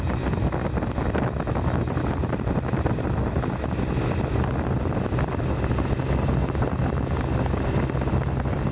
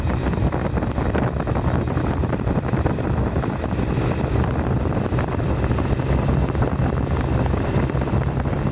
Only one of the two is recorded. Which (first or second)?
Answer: first